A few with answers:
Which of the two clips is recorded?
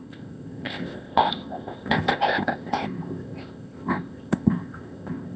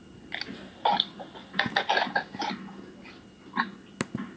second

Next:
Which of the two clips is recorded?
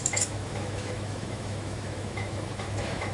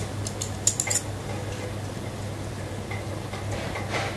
second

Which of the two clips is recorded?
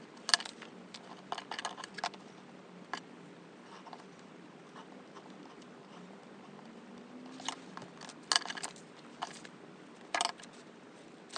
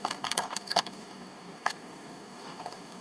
first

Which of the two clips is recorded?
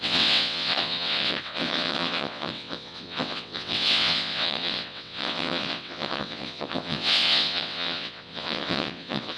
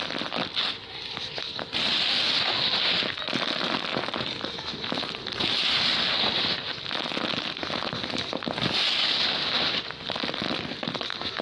second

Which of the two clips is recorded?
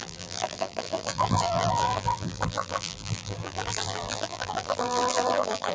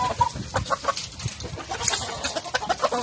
second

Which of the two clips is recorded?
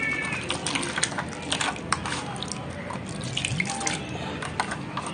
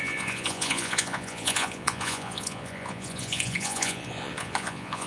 first